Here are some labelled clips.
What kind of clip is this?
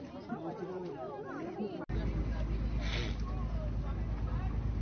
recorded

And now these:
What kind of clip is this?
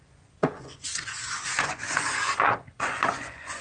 remade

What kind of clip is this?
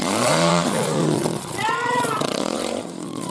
remade